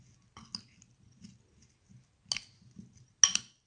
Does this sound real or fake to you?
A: real